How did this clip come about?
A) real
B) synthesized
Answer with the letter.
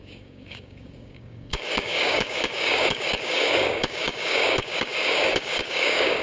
B